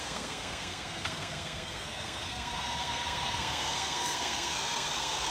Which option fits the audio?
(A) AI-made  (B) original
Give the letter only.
A